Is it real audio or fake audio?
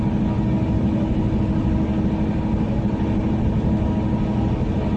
real